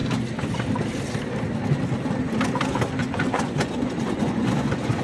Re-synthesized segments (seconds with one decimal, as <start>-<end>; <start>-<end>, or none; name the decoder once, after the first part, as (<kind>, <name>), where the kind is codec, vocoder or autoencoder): 3.0-5.0 (vocoder, Vocos)